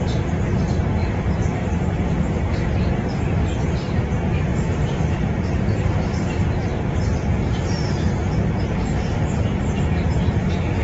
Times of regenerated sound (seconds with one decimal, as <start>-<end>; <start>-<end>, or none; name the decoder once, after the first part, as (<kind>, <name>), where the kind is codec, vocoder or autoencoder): 1.0-3.0 (vocoder, BigVGAN v2); 4.5-9.1